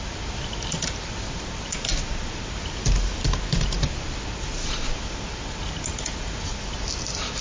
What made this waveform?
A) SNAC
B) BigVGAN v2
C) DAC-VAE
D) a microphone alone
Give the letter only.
D